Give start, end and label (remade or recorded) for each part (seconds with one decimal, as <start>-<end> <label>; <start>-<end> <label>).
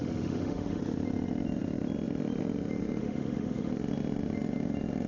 0.0-0.8 remade; 0.8-3.0 recorded; 3.0-3.7 remade; 3.7-5.1 recorded